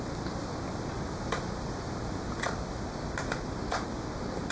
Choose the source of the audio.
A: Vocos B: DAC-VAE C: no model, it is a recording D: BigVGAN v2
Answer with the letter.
C